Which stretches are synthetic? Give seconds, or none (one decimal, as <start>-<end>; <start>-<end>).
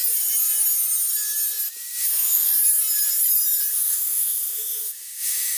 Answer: 2.0-2.6; 3.7-5.6